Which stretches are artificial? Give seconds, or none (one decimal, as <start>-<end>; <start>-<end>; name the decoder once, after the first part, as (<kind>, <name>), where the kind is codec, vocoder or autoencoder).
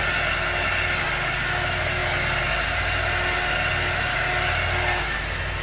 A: none